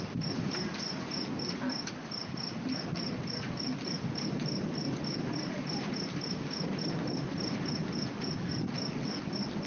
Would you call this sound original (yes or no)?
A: yes